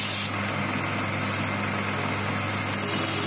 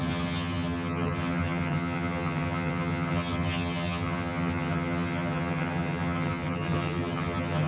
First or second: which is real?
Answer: first